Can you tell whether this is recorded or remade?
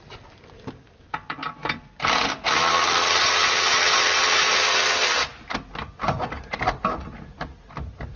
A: recorded